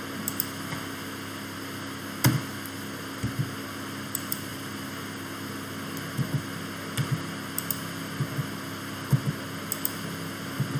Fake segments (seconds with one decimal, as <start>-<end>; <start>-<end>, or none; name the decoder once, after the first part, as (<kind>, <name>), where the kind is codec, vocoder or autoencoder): none

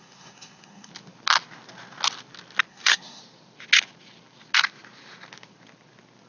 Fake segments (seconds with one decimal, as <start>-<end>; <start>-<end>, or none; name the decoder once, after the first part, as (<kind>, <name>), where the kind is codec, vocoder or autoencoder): 0.0-0.9 (codec, SNAC); 2.7-3.2

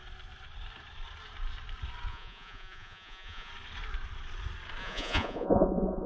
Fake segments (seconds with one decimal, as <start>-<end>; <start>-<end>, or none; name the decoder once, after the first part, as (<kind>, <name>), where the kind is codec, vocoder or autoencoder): 2.1-3.5 (vocoder, Vocos); 4.8-6.1

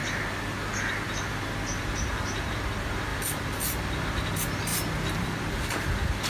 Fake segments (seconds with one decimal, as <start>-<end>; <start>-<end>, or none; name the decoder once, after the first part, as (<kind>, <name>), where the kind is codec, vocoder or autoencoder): 3.1-4.3 (vocoder, BigVGAN v2); 4.7-5.5

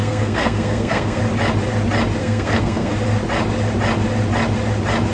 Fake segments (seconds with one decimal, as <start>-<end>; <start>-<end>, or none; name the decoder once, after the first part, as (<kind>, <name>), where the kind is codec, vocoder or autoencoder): 0.0-1.2 (codec, SNAC); 2.2-2.9

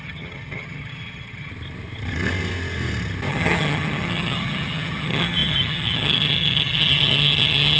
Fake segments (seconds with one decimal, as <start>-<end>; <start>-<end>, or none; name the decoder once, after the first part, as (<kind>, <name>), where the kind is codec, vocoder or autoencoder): 0.0-1.5 (vocoder, HiFi-GAN); 3.3-7.8

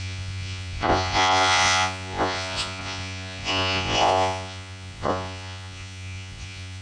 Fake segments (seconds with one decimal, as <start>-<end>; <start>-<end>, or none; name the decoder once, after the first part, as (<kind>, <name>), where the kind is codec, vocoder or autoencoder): 0.0-6.8 (vocoder, Vocos)